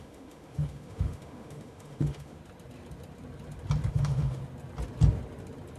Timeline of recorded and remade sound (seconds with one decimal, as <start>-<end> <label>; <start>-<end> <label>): 0.0-2.4 remade; 2.4-3.9 recorded; 3.9-4.4 remade; 4.4-5.8 recorded